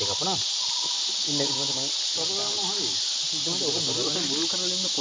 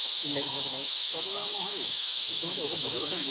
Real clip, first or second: first